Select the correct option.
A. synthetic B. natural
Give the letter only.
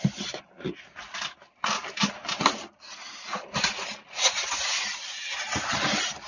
B